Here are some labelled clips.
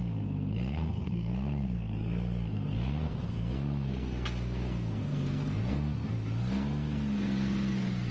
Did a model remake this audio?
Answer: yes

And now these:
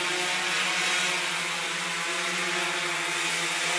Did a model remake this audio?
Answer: no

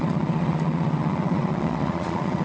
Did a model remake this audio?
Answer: yes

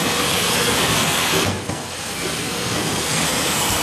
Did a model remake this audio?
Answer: yes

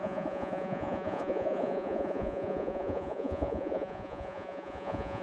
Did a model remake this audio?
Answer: yes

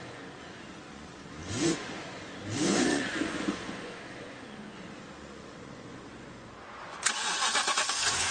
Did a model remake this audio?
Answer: yes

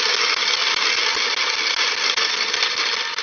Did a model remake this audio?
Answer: no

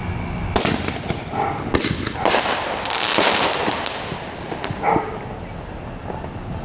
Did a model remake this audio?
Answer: no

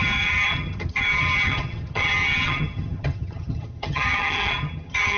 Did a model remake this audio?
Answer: yes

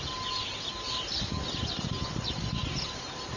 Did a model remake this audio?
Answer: no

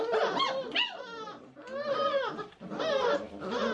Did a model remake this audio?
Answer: no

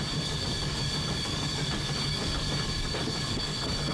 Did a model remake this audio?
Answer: yes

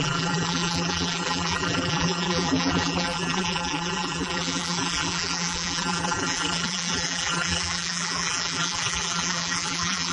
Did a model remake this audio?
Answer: yes